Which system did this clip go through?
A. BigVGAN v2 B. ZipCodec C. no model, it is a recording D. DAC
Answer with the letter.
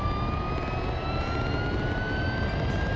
C